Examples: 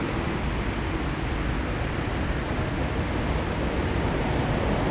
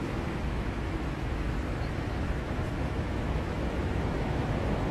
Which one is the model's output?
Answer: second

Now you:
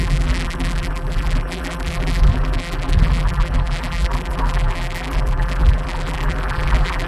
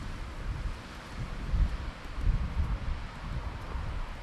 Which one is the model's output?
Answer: first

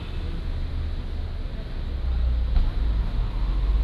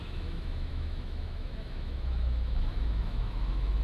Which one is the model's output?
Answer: second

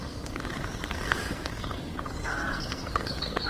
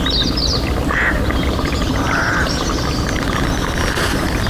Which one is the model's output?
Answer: first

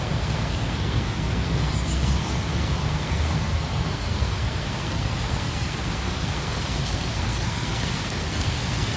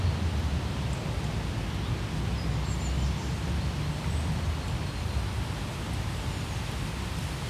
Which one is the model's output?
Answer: first